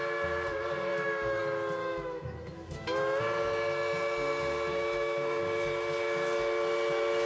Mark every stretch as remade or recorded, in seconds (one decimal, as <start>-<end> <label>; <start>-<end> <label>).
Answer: 0.0-0.9 recorded; 0.9-1.4 remade; 1.4-1.8 recorded; 1.8-3.2 remade; 3.2-4.7 recorded; 4.7-5.4 remade; 5.4-7.3 recorded

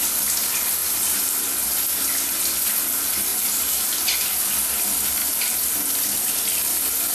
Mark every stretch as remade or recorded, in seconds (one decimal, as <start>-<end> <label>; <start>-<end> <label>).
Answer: 0.0-0.8 recorded; 0.8-1.3 remade; 1.3-3.3 recorded; 3.3-3.9 remade; 3.9-7.1 recorded

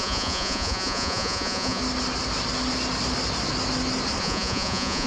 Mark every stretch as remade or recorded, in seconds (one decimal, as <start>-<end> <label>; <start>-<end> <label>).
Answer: 0.0-1.8 remade; 1.8-4.2 recorded; 4.2-5.1 remade